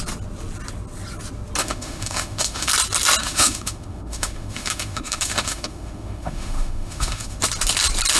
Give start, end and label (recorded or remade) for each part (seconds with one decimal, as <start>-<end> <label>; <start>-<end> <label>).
0.0-1.6 recorded; 1.6-2.7 remade; 2.7-3.2 recorded; 3.2-7.4 remade; 7.4-8.2 recorded